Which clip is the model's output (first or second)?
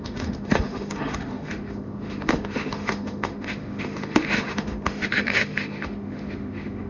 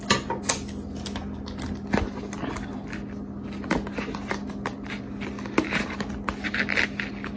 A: first